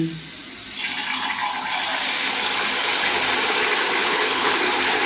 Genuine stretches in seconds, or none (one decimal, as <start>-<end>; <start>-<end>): 0.0-4.0; 4.6-5.1